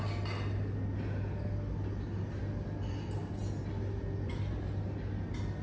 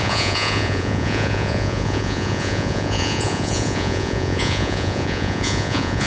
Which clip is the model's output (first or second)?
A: second